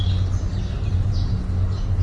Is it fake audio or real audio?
real